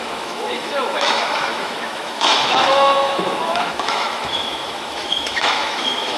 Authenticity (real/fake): fake